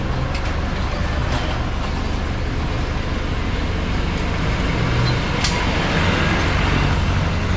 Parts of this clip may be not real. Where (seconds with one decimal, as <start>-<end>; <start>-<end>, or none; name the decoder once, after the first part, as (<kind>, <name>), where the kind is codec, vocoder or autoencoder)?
none